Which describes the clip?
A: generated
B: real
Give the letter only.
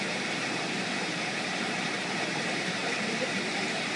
A